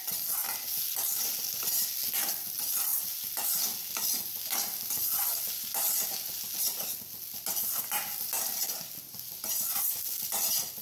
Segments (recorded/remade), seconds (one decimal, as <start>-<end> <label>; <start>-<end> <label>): 0.0-10.8 recorded

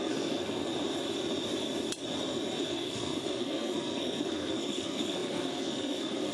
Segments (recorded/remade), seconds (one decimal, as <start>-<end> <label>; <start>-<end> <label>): 0.0-0.6 remade; 0.6-2.6 recorded; 2.6-6.3 remade

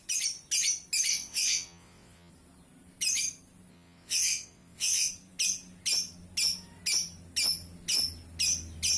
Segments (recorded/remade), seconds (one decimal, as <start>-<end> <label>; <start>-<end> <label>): 0.0-1.1 recorded; 1.1-2.3 remade; 2.3-3.7 recorded; 3.7-5.1 remade; 5.1-9.0 recorded

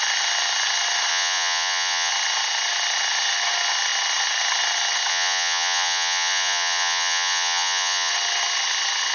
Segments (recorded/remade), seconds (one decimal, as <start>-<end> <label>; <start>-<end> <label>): 0.0-1.1 recorded; 1.1-2.1 remade; 2.1-5.1 recorded; 5.1-8.1 remade; 8.1-9.1 recorded

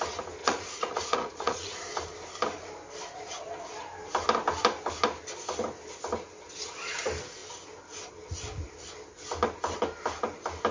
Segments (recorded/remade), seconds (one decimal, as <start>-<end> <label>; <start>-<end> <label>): 0.0-0.4 recorded; 0.4-1.7 remade; 1.7-10.7 recorded

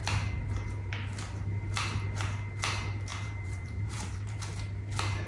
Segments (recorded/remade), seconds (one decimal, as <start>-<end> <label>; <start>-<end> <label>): 0.0-3.1 recorded; 3.1-4.4 remade; 4.4-5.3 recorded

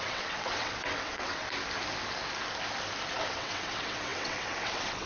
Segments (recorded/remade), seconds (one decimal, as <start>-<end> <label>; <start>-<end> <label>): 0.0-1.4 remade; 1.4-3.2 recorded; 3.2-5.1 remade